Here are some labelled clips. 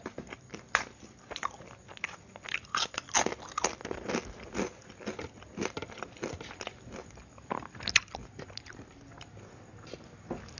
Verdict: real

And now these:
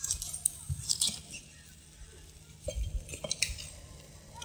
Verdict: real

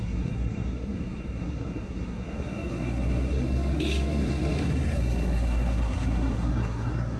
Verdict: fake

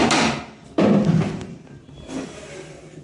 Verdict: real